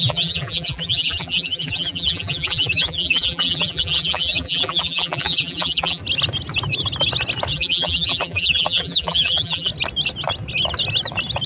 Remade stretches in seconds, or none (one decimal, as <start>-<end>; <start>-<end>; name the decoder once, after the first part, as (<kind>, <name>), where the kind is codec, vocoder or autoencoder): 0.0-6.0 (vocoder, BigVGAN v2); 7.5-9.7

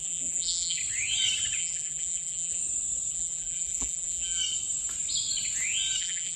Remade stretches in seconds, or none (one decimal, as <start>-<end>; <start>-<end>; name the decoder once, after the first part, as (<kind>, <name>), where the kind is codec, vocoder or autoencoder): 0.0-0.8 (vocoder, BigVGAN v2); 1.6-2.6; 3.1-4.4; 6.0-6.4

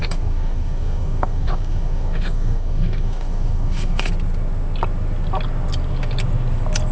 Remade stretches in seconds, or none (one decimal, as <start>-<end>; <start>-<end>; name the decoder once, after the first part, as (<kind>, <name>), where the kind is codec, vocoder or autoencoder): 0.0-4.1 (codec, DAC)

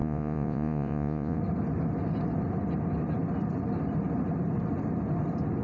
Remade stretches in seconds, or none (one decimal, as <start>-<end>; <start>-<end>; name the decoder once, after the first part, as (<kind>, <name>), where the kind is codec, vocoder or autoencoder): 0.0-1.4 (vocoder, Vocos)